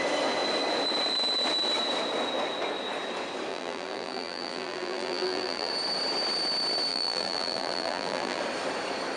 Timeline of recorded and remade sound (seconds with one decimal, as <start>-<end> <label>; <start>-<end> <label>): 0.0-3.5 recorded; 3.5-5.7 remade; 5.7-6.9 recorded; 6.9-8.4 remade; 8.4-9.2 recorded